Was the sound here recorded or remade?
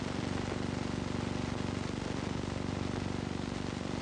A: recorded